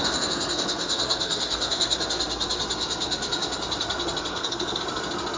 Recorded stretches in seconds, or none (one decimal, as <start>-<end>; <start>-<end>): 2.0-4.3; 4.8-5.4

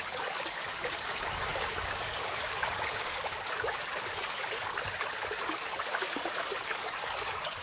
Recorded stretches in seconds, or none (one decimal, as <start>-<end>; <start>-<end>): none